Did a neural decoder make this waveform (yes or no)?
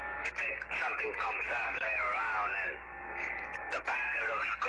yes